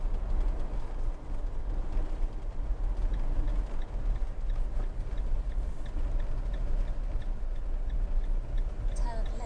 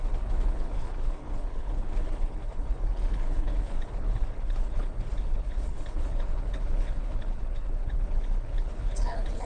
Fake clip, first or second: second